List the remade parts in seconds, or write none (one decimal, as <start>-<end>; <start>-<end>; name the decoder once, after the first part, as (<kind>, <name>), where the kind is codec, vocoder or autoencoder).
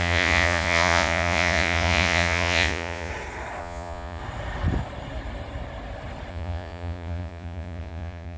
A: 0.0-3.1 (vocoder, Vocos); 3.6-4.2; 6.3-8.4